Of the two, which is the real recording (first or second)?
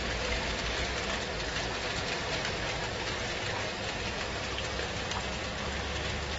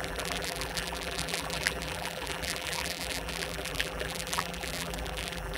first